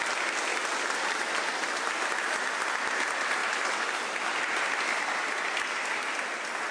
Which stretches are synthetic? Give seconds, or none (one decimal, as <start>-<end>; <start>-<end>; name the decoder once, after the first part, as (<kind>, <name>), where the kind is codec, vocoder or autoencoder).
none